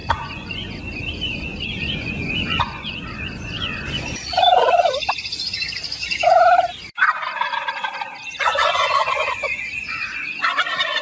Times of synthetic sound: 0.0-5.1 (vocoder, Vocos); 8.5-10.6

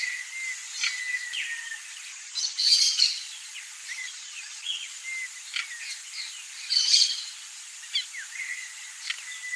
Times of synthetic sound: 2.1-3.0 (vocoder, Vocos); 4.0-4.9

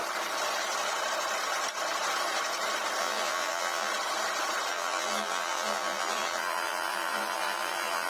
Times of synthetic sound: 3.0-3.9 (vocoder, BigVGAN v2); 4.7-8.1

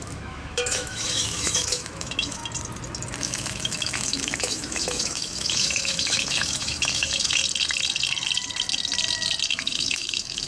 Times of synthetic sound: 0.0-2.4 (autoencoder, DAC-VAE); 3.2-7.4; 9.5-10.5